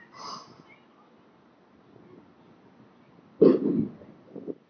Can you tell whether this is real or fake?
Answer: real